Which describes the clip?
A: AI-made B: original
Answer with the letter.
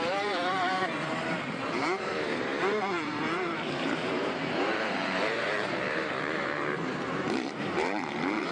A